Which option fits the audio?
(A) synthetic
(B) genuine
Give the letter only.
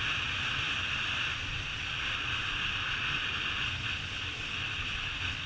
B